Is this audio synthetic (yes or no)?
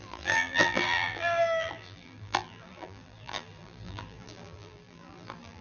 yes